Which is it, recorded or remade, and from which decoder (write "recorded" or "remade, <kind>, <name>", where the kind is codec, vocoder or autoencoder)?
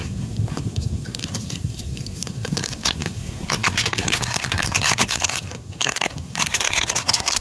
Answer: remade, codec, SNAC